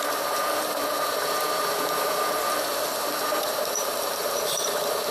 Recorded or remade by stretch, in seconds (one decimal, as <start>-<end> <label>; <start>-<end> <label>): 0.0-5.1 remade